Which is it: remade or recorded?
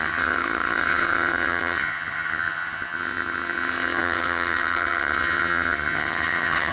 remade